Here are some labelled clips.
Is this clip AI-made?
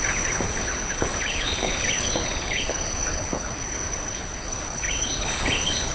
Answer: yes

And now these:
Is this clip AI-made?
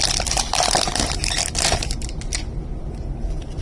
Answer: no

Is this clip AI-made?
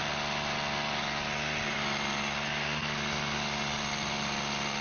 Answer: no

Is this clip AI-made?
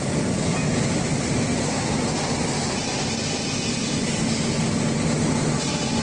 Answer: no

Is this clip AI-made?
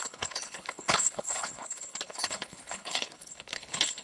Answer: yes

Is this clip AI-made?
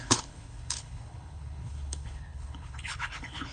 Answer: yes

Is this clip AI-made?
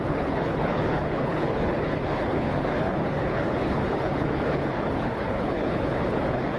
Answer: yes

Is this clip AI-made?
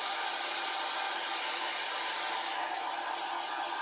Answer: no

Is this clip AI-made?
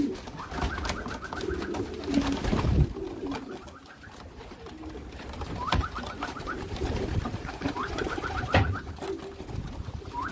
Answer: no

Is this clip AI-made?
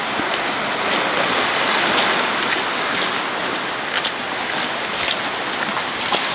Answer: no